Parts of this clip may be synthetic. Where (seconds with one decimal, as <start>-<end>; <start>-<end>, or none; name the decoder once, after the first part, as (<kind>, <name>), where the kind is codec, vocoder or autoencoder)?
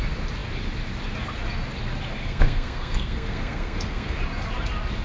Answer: 2.2-4.1 (codec, SNAC)